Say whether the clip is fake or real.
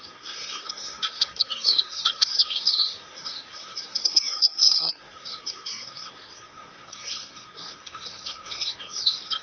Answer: fake